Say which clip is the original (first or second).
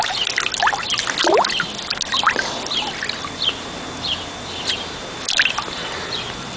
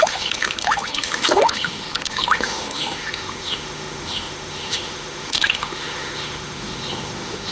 first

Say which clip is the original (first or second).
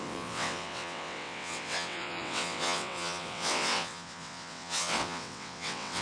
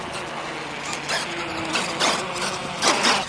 second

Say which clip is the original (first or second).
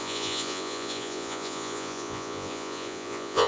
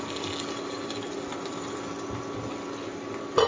second